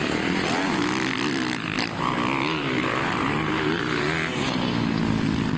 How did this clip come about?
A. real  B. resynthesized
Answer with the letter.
A